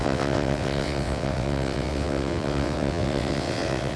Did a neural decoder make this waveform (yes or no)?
yes